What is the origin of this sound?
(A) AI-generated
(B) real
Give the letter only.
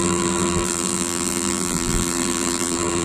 A